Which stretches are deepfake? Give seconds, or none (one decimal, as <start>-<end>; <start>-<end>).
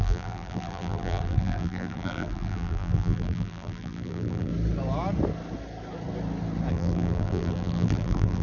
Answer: 0.0-4.5; 6.7-8.4